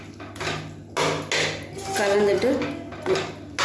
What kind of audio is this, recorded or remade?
recorded